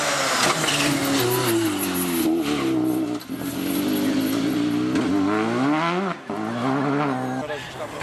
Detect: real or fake real